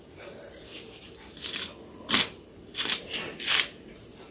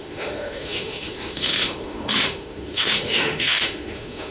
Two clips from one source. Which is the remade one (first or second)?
second